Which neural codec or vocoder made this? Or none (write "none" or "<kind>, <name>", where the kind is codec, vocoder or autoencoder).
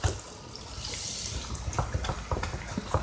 none